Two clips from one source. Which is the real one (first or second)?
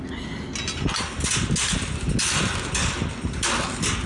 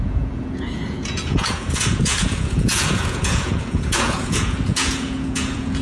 first